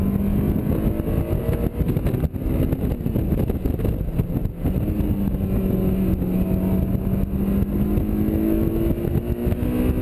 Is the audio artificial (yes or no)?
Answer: no